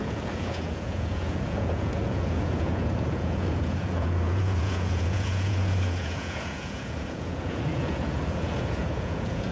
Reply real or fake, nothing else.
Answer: fake